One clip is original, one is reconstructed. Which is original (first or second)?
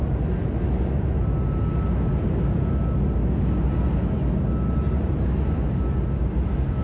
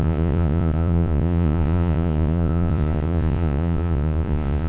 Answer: first